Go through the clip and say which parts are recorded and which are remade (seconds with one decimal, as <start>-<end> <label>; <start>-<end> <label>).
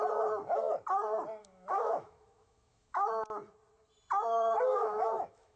0.0-1.4 recorded; 1.4-3.1 remade; 3.1-4.7 recorded; 4.7-5.6 remade